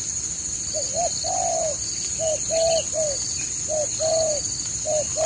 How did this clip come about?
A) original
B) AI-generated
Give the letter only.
A